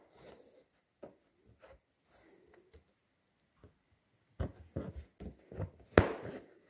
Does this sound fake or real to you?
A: real